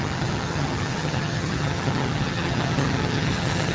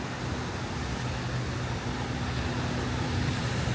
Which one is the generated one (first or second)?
first